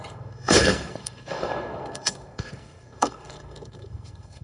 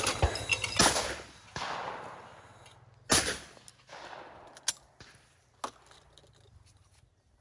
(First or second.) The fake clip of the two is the first